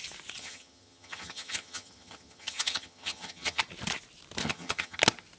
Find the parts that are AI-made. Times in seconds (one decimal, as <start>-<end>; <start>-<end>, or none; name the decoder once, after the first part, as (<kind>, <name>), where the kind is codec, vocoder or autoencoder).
0.4-3.6 (vocoder, HiFi-GAN); 4.4-5.0